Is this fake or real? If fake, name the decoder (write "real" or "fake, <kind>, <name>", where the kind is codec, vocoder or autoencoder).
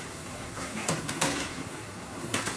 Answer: fake, codec, SNAC